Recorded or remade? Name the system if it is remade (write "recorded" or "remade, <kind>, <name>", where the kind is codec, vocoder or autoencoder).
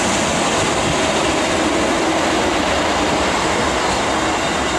recorded